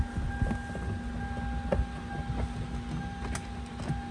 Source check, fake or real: real